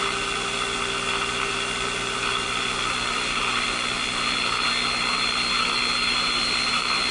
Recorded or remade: recorded